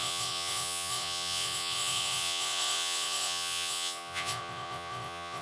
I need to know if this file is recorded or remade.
remade